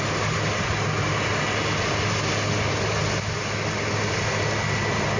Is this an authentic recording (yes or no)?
yes